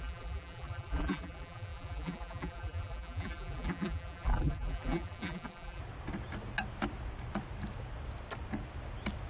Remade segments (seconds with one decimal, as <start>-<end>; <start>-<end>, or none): 0.0-5.8